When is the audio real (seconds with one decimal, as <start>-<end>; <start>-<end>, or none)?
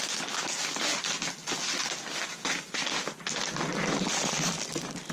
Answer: 0.0-5.1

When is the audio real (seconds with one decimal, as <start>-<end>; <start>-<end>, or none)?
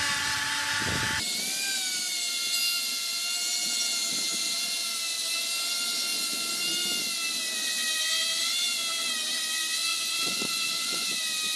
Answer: 0.0-9.9; 11.2-11.6